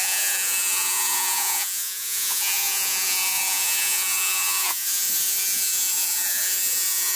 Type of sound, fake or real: fake